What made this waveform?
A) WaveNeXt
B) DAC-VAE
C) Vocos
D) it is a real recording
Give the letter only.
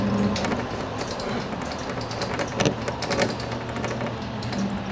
D